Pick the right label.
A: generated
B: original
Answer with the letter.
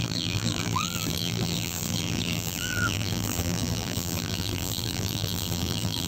A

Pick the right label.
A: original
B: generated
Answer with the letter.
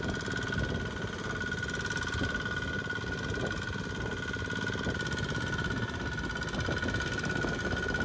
A